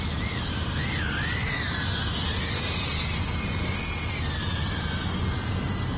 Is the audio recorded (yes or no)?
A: no